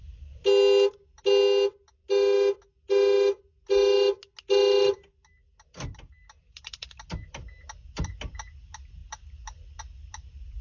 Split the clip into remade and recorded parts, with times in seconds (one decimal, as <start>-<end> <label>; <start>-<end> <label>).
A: 0.0-10.6 recorded